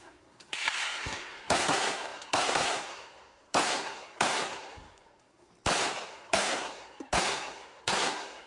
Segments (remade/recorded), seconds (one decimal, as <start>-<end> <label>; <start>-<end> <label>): 0.0-5.5 remade; 5.5-6.1 recorded; 6.1-8.5 remade